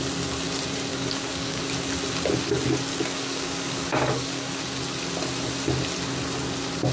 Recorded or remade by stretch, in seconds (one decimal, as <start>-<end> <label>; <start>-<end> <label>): 0.0-0.9 recorded; 0.9-1.6 remade; 1.6-2.9 recorded; 2.9-4.6 remade; 4.6-6.9 recorded